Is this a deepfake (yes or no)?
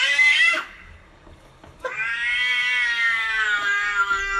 yes